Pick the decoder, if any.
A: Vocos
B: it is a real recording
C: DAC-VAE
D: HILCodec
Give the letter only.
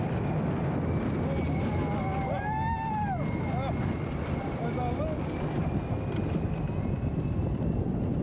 B